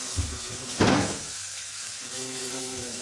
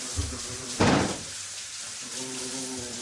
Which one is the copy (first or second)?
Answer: first